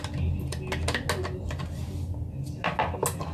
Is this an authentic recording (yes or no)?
yes